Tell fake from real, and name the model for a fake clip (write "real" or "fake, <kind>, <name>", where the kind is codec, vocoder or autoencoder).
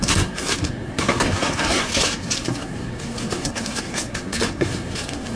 fake, codec, SNAC